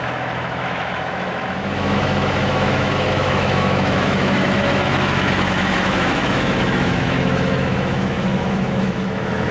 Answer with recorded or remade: remade